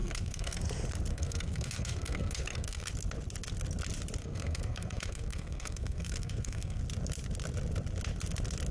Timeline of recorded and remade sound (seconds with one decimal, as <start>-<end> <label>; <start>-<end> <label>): 0.0-0.6 remade; 0.6-1.1 recorded; 1.1-2.9 remade; 2.9-4.2 recorded; 4.2-6.8 remade; 6.8-8.7 recorded

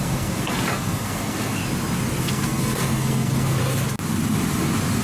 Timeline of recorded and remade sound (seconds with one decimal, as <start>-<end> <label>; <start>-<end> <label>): 0.0-1.6 remade; 1.6-2.2 recorded; 2.2-3.6 remade; 3.6-5.0 recorded

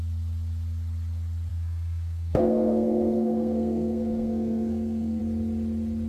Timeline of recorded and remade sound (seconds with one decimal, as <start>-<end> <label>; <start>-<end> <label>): 0.0-1.5 recorded; 1.5-5.2 remade; 5.2-6.1 recorded

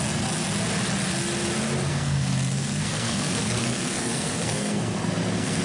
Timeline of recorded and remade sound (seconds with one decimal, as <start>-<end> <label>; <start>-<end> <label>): 0.0-1.9 recorded; 1.9-5.6 remade

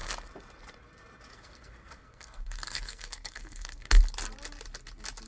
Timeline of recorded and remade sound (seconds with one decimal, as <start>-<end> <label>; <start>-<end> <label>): 0.0-1.3 recorded; 1.3-4.0 remade; 4.0-5.3 recorded

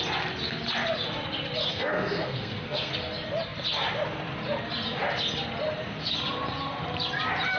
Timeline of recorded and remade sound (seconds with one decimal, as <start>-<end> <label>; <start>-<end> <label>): 0.0-1.7 recorded; 1.7-2.9 remade; 2.9-7.6 recorded